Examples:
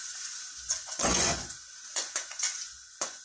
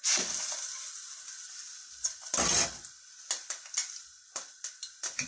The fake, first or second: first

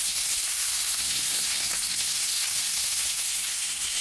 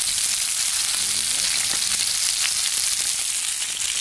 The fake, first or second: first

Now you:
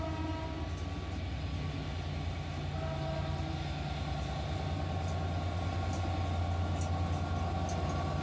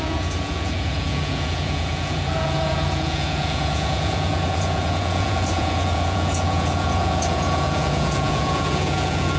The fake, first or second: second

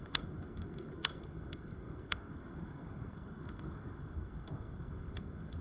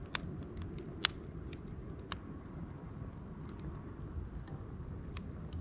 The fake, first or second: first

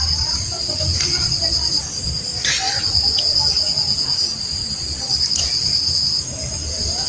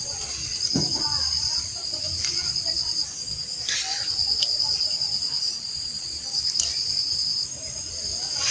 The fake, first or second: second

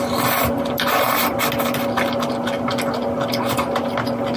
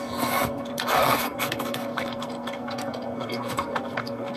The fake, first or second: second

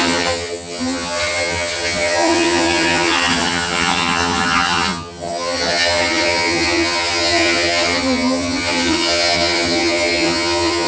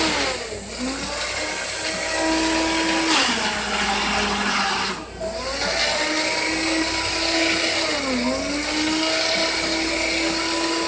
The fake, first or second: first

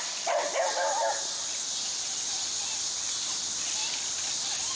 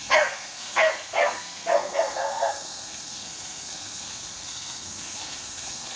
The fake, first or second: second